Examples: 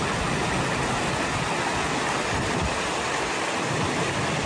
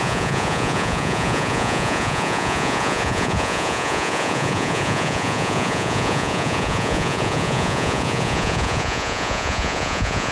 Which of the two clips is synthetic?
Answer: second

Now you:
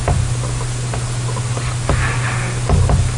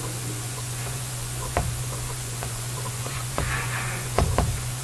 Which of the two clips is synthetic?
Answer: second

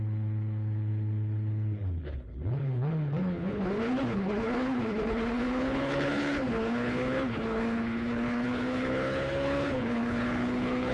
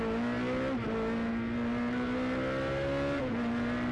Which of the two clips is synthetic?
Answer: first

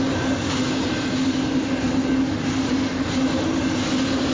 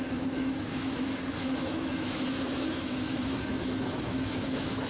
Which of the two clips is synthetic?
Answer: second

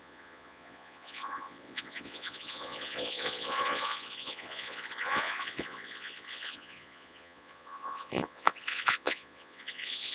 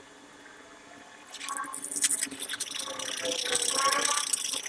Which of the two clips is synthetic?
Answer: first